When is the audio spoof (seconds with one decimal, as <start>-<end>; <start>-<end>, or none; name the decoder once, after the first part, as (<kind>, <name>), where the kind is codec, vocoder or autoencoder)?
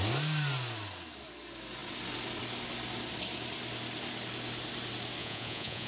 5.2-5.9 (vocoder, Vocos)